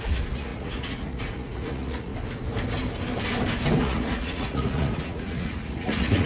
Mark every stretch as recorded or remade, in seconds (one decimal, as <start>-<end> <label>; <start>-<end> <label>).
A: 0.0-2.1 remade; 2.1-3.8 recorded; 3.8-6.3 remade